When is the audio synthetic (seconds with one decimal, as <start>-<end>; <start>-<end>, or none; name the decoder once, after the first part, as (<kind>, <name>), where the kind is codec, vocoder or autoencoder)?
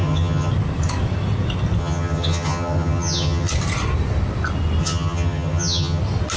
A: 0.0-0.5 (vocoder, HiFi-GAN); 1.8-3.5; 4.8-6.0